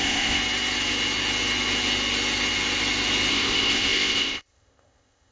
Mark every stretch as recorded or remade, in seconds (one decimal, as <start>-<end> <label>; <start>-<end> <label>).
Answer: 0.0-0.4 remade; 0.4-3.3 recorded; 3.3-5.3 remade